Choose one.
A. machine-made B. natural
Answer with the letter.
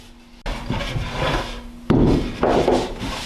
B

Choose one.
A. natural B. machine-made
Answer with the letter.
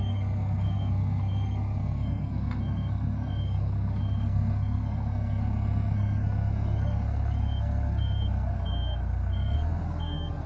B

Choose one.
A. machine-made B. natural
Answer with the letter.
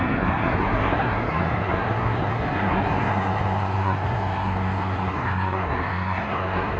A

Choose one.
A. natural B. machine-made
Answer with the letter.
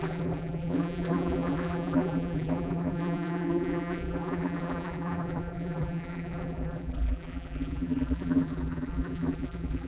B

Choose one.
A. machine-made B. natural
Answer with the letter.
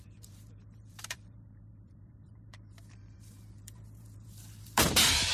A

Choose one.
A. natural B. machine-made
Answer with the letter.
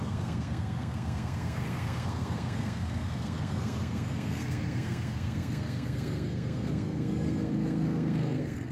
B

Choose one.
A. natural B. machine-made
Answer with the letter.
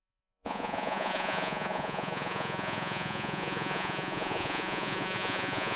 B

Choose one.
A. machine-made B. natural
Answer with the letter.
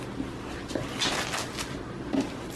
B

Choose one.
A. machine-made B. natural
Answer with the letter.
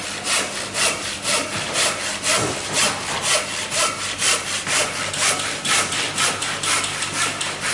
B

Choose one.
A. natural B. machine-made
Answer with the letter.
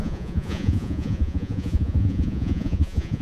B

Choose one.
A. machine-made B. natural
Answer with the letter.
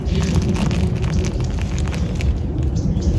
B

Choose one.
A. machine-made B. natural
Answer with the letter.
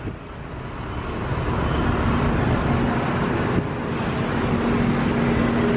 B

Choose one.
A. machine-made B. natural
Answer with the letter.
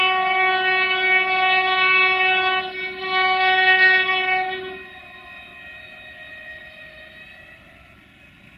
B